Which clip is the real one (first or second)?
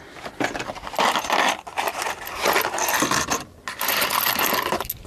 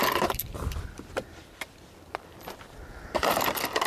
first